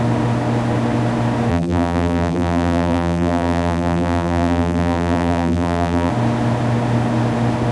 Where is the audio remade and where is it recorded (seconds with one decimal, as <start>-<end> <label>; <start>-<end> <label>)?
0.0-1.5 recorded; 1.5-6.1 remade; 6.1-7.7 recorded